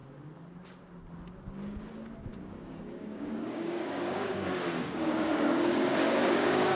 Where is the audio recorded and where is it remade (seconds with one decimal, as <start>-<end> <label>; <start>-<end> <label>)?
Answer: 0.0-2.3 recorded; 2.3-6.8 remade